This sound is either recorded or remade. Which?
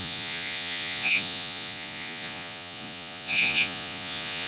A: remade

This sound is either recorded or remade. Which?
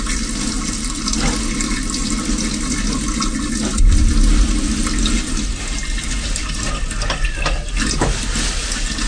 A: recorded